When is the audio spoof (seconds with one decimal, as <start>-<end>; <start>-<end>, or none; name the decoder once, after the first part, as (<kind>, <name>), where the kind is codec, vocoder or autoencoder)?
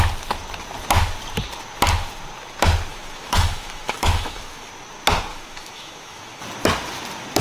2.9-4.7 (autoencoder, DAC-VAE); 5.3-6.4